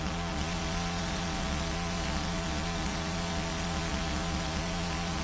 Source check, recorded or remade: remade